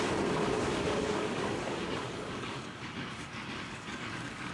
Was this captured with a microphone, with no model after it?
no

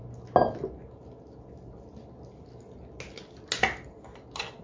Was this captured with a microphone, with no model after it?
yes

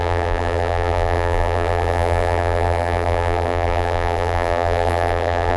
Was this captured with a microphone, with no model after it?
no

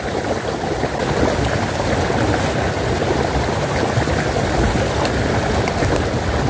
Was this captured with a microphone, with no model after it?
yes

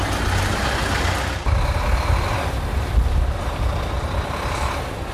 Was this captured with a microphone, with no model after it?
yes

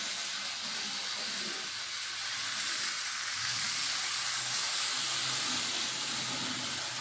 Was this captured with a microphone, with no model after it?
yes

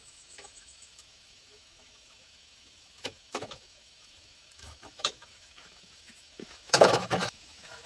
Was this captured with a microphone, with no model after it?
no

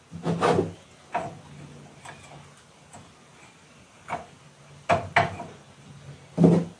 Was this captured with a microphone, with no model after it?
yes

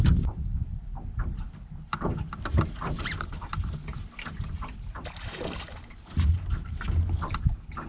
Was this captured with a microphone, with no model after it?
yes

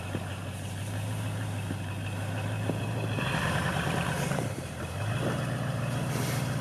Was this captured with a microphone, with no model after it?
no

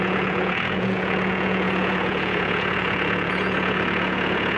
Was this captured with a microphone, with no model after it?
no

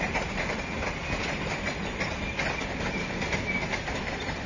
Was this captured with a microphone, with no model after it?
yes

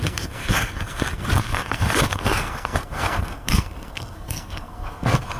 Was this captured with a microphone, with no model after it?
no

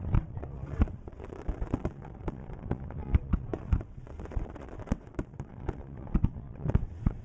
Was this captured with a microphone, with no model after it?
no